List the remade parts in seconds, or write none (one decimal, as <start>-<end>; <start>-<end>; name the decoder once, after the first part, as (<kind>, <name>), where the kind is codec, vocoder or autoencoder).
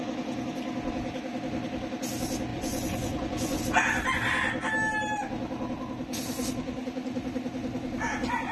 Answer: 2.5-3.6 (vocoder, Vocos)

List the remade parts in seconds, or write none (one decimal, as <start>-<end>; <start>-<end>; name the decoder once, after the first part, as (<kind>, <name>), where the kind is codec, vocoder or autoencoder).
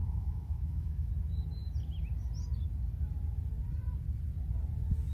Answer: 0.0-1.1 (autoencoder, DAC-VAE)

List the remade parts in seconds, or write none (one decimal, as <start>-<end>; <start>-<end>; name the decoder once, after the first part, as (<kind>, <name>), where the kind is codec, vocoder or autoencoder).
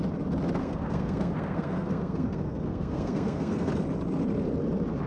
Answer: 0.6-3.7 (codec, SNAC)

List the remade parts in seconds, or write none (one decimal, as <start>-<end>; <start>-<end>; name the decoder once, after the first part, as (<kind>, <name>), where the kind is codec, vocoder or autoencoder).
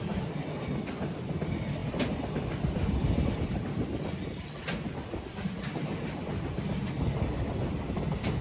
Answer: none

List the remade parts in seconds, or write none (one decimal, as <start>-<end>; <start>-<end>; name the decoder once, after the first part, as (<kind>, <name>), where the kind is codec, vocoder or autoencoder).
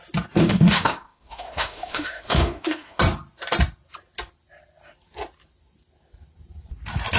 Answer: 0.4-3.0 (autoencoder, DAC-VAE)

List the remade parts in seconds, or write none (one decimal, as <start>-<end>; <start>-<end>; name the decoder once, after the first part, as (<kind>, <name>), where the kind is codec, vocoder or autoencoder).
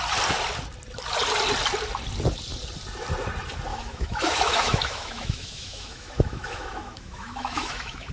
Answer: 3.7-8.1 (autoencoder, DAC-VAE)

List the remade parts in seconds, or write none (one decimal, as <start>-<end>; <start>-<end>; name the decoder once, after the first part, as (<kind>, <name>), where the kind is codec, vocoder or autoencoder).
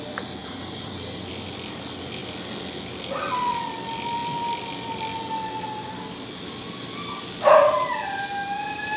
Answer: 0.4-1.3 (vocoder, BigVGAN v2)